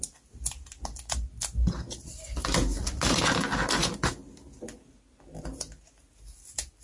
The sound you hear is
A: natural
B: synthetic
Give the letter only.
A